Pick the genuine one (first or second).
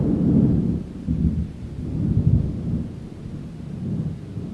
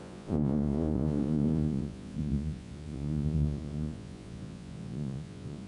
first